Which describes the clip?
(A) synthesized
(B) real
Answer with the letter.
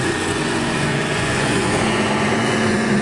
A